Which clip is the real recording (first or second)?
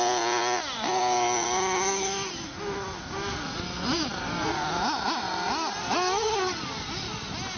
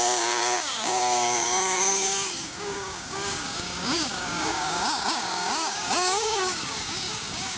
first